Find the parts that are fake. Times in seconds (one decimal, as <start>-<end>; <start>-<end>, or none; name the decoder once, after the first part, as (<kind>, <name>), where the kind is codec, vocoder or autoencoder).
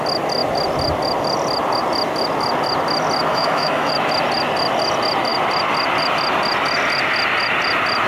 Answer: 3.3-3.9 (autoencoder, DAC-VAE)